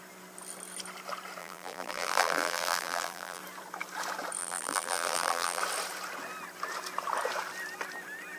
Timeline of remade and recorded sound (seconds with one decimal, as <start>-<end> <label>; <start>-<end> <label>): 0.0-1.4 recorded; 1.4-3.4 remade; 3.4-4.4 recorded; 4.4-5.6 remade; 5.6-8.4 recorded